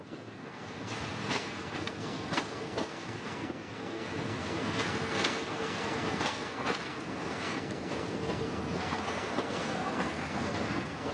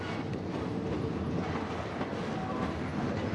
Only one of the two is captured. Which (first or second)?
second